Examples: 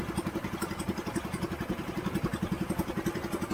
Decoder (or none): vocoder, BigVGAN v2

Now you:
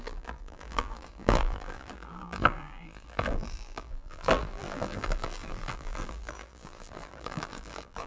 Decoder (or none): vocoder, BigVGAN v2